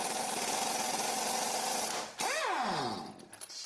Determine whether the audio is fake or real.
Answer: real